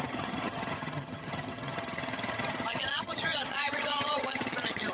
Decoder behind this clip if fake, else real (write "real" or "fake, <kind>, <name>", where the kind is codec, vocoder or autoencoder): fake, vocoder, HiFi-GAN